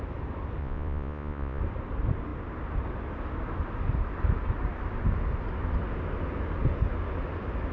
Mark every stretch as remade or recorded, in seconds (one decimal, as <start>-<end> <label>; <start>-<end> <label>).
0.0-0.6 recorded; 0.6-1.6 remade; 1.6-7.7 recorded